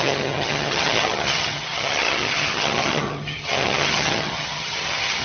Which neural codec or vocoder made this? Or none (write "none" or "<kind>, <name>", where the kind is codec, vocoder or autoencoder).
vocoder, HiFi-GAN